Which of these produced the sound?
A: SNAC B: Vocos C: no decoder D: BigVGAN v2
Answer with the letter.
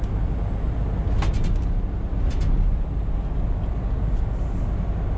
C